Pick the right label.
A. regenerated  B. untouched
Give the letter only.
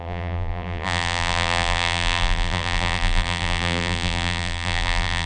A